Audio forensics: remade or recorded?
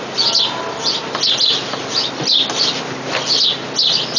recorded